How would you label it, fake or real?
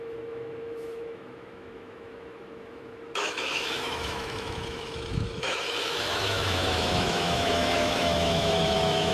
fake